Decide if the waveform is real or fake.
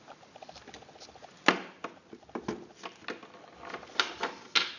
real